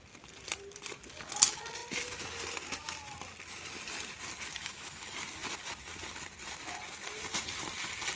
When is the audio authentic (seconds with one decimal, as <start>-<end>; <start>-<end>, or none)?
0.0-4.6; 5.1-8.2